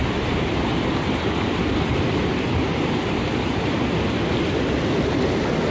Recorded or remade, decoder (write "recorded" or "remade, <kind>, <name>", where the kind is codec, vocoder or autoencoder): recorded